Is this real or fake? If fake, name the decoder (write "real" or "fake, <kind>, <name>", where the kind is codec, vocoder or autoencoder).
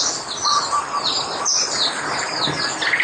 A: real